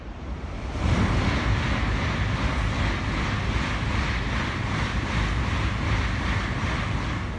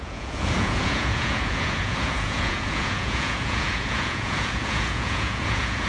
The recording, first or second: first